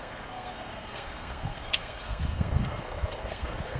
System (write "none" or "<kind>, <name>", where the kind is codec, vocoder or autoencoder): codec, SNAC